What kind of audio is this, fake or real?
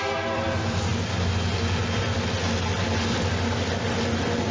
real